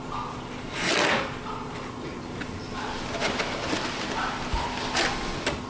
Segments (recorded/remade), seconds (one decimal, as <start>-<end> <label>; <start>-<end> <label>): 0.0-5.7 recorded